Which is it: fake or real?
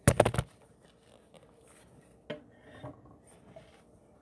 real